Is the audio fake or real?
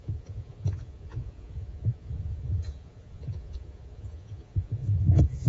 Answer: fake